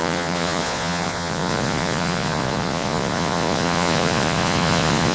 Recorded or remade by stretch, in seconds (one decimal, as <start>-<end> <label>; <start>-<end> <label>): 0.0-5.1 remade